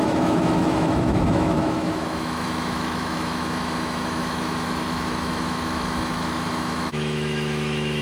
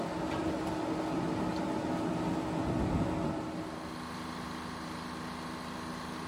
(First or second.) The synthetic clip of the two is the first